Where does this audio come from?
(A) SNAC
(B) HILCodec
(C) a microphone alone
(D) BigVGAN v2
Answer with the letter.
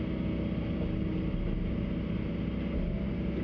C